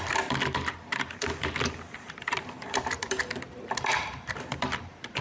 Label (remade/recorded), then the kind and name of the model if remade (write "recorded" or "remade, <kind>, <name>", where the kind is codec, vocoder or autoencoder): remade, vocoder, BigVGAN v2